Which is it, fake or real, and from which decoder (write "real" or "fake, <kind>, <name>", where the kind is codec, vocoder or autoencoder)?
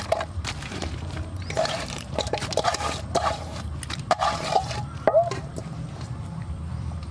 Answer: fake, vocoder, BigVGAN v2